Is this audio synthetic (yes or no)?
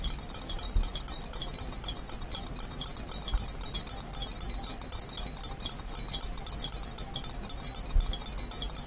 no